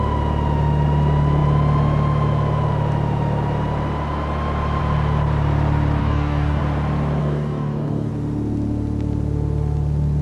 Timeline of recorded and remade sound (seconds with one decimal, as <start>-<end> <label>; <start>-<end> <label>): 0.0-6.0 recorded; 6.0-6.6 remade; 6.6-7.2 recorded; 7.2-8.1 remade; 8.1-10.2 recorded